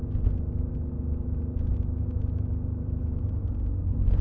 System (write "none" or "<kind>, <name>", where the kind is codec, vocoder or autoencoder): none